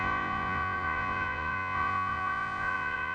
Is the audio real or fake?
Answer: fake